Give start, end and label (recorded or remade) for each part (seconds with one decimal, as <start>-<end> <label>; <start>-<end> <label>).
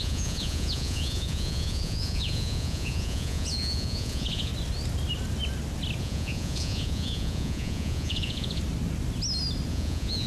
0.0-4.5 remade; 4.5-6.0 recorded; 6.0-8.6 remade; 8.6-9.7 recorded; 9.7-10.3 remade